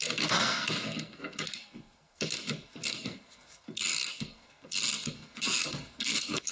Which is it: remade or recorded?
remade